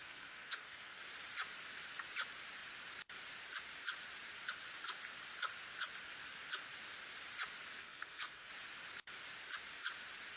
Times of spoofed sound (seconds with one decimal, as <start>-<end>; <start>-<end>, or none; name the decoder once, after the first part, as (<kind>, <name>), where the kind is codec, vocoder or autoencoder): 0.0-1.0 (codec, SNAC); 7.8-8.5